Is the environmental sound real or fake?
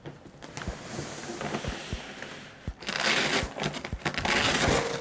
real